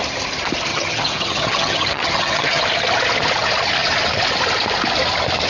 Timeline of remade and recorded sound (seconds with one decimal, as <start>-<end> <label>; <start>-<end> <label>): 0.0-0.7 recorded; 0.7-2.6 remade; 2.6-5.5 recorded